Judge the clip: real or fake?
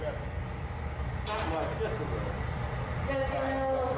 real